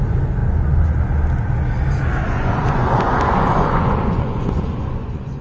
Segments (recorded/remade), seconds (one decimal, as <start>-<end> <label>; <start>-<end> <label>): 0.0-0.4 recorded; 0.4-0.9 remade; 0.9-2.2 recorded; 2.2-5.4 remade